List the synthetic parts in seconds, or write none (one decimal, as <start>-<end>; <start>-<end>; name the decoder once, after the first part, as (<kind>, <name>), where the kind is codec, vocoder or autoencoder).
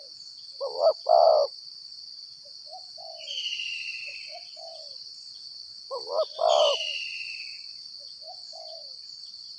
none